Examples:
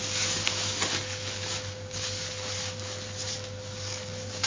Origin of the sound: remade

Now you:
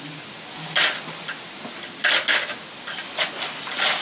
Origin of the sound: recorded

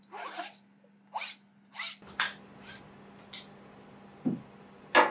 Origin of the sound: recorded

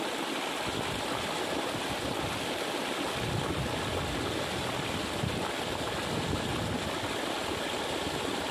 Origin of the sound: recorded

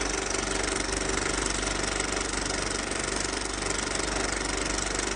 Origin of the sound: recorded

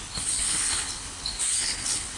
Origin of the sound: remade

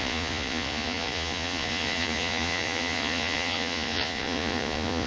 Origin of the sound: remade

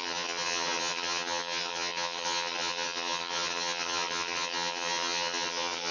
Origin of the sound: remade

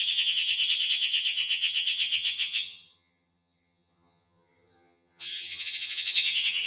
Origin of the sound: remade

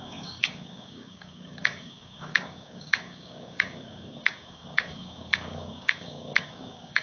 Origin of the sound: remade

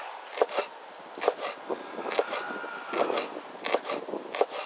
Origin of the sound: recorded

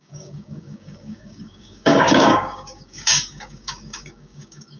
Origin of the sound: remade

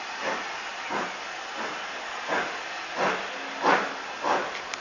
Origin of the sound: recorded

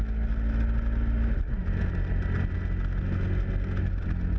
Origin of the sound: recorded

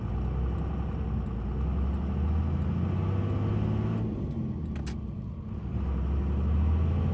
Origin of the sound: recorded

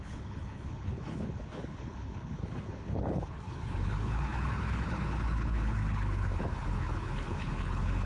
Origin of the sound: remade